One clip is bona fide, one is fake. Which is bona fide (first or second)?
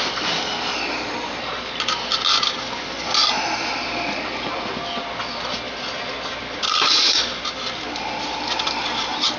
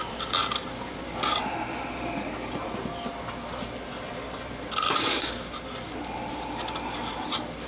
first